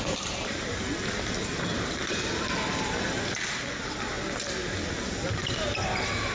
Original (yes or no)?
yes